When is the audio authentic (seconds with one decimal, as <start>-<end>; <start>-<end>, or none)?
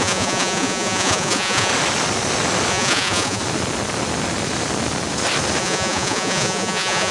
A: 1.7-2.7; 3.4-5.6